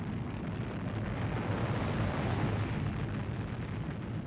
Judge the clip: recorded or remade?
recorded